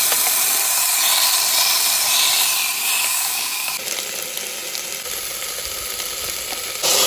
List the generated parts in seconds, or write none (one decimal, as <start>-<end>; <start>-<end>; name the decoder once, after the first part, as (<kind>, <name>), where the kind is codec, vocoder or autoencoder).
3.1-3.7 (codec, DAC)